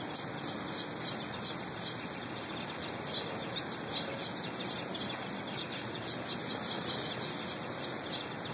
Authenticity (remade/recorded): recorded